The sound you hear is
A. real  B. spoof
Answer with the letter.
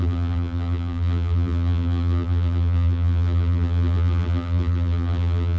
B